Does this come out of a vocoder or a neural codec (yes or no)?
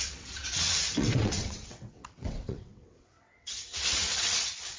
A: yes